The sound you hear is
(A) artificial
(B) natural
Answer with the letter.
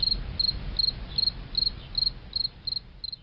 B